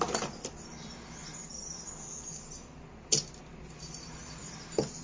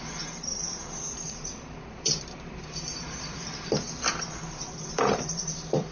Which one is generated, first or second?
second